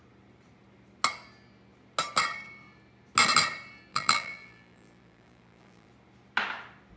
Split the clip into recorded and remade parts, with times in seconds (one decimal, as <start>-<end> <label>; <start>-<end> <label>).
0.0-3.9 recorded; 3.9-5.9 remade; 5.9-7.0 recorded